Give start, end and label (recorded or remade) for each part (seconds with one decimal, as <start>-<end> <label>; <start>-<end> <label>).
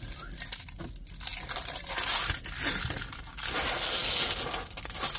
0.0-1.3 recorded; 1.3-3.2 remade; 3.2-5.2 recorded